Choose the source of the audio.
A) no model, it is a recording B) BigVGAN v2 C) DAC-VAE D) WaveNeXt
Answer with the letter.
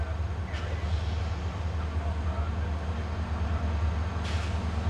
A